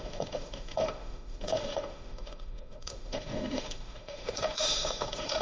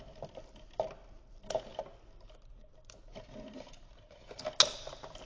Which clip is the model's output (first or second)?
first